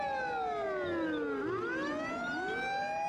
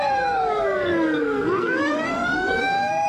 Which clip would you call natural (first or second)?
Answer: first